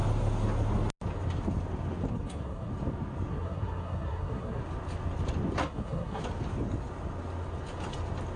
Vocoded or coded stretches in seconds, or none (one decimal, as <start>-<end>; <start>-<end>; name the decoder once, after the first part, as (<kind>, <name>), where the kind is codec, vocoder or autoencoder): 2.1-2.7 (codec, SNAC); 3.3-4.6; 5.6-6.2